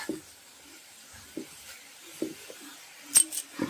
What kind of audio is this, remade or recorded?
recorded